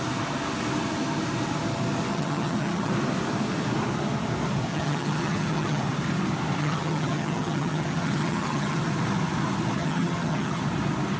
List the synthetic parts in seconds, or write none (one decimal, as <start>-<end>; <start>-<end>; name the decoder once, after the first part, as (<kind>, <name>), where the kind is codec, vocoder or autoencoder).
2.1-2.9 (vocoder, HiFi-GAN); 4.7-5.8; 6.6-8.8; 9.8-10.6